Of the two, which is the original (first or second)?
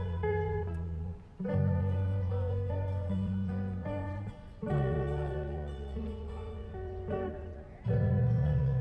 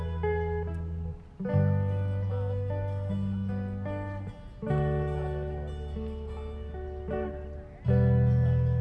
second